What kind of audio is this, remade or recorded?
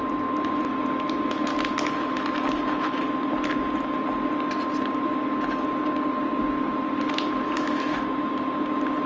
recorded